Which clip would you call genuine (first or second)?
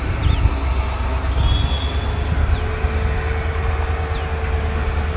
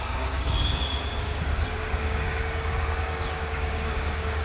first